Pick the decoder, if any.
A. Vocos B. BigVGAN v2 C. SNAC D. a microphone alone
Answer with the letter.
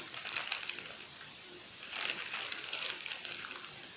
B